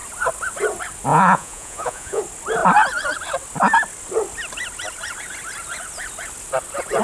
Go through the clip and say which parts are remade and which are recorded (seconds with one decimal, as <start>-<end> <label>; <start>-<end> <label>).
0.0-1.1 recorded; 1.1-2.2 remade; 2.2-7.0 recorded

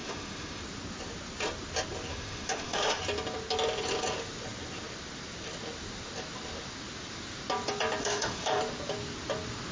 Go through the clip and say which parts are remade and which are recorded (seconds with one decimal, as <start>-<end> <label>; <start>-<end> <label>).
0.0-0.6 remade; 0.6-2.1 recorded; 2.1-3.0 remade; 3.0-8.0 recorded; 8.0-8.6 remade; 8.6-9.7 recorded

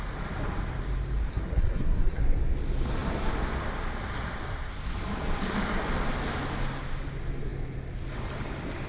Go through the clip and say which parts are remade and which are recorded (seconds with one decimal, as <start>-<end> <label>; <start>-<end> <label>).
0.0-1.3 recorded; 1.3-2.2 remade; 2.2-8.9 recorded

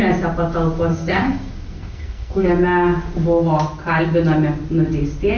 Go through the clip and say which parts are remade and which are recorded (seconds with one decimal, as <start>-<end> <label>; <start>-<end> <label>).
0.0-0.9 recorded; 0.9-2.5 remade; 2.5-5.4 recorded

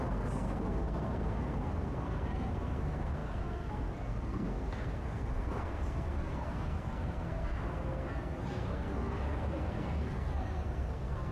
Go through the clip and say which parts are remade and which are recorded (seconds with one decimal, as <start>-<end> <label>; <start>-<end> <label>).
0.0-11.3 remade

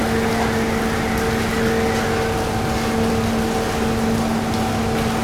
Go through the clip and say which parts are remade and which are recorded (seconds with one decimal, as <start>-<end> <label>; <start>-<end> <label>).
0.0-5.2 recorded

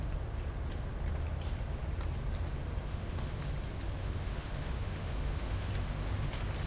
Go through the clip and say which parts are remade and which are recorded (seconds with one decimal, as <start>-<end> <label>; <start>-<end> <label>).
0.0-2.9 recorded; 2.9-3.5 remade; 3.5-4.0 recorded; 4.0-5.7 remade; 5.7-6.7 recorded

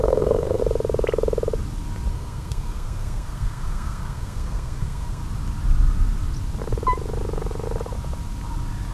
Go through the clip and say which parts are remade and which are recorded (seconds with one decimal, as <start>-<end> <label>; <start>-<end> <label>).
0.0-0.6 remade; 0.6-2.1 recorded; 2.1-5.2 remade; 5.2-8.9 recorded